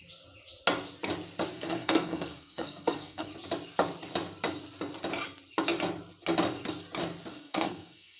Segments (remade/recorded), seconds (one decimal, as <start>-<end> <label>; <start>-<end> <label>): 0.0-1.5 recorded; 1.5-3.3 remade; 3.3-7.3 recorded; 7.3-8.2 remade